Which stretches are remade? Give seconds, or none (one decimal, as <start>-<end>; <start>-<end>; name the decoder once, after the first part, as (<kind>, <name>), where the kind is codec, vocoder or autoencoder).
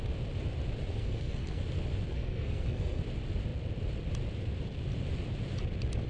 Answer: 0.9-1.6 (codec, SNAC); 2.1-3.0